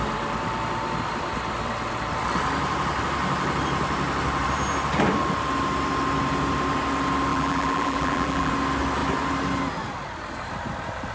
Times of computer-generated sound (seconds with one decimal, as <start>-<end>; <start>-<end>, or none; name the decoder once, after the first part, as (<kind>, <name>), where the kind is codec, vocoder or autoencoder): 7.3-8.5 (vocoder, BigVGAN v2)